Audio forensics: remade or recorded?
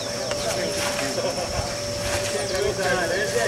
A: recorded